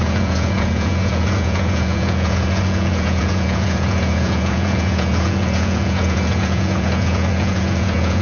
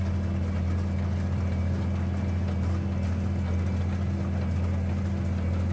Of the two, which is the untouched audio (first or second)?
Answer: second